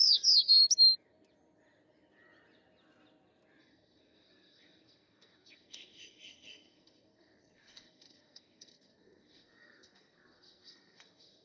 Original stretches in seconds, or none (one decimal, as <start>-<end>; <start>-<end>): 0.6-3.6